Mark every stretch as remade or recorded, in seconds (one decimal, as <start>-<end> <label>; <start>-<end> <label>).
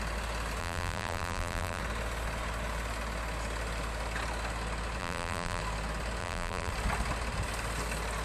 0.0-0.6 recorded; 0.6-1.8 remade; 1.8-5.0 recorded; 5.0-5.6 remade; 5.6-6.2 recorded; 6.2-6.7 remade; 6.7-8.2 recorded